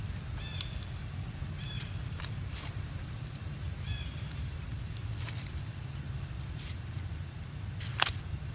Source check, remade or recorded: remade